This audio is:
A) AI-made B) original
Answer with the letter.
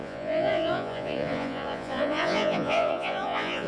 A